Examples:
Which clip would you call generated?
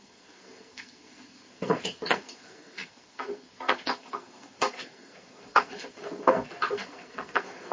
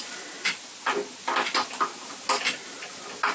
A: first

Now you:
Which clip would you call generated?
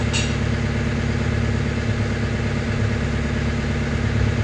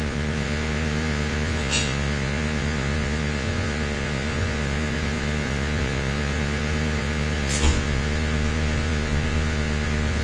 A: second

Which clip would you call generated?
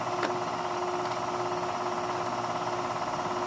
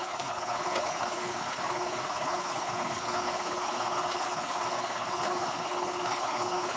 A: second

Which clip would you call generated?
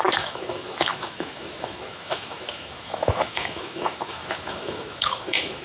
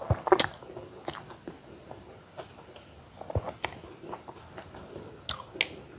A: first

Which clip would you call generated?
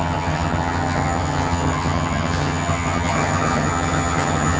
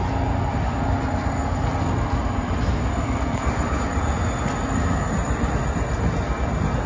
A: first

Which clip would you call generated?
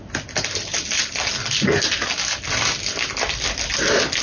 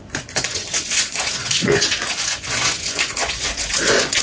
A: second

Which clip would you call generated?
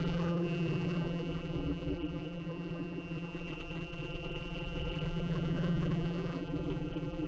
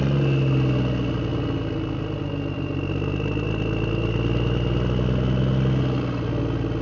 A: first